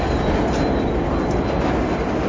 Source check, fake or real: real